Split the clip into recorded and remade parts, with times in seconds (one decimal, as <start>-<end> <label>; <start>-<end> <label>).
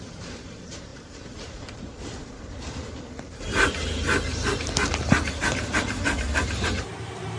0.0-7.4 remade